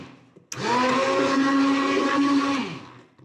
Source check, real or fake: real